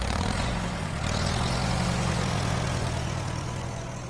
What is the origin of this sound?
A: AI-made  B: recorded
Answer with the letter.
A